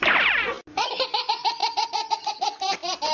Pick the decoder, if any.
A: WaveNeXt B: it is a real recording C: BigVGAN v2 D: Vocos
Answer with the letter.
B